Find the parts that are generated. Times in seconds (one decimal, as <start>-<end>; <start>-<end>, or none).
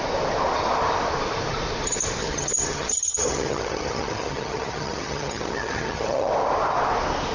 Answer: 2.2-6.3